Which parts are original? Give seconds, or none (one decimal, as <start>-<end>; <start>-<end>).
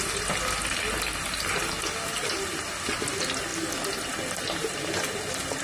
0.0-5.6